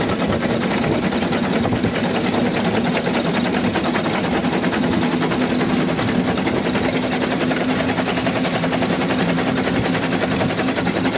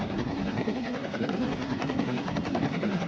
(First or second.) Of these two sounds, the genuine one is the first